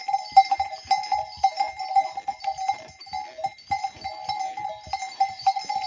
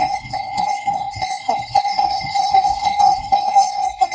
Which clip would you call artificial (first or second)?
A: second